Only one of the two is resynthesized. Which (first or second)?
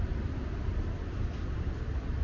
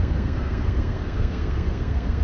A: second